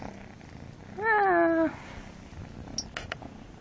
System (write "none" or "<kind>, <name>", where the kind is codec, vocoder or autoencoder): none